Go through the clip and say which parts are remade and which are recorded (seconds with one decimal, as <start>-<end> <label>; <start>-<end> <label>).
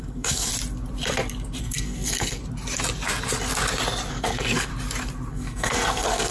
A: 0.0-0.5 remade; 0.5-1.6 recorded; 1.6-2.4 remade; 2.4-4.1 recorded; 4.1-4.7 remade; 4.7-5.3 recorded; 5.3-6.3 remade